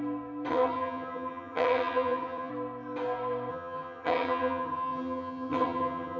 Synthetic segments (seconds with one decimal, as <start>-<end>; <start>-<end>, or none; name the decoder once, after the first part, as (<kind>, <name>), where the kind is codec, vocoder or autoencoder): 0.5-2.5 (vocoder, HiFi-GAN); 3.5-6.2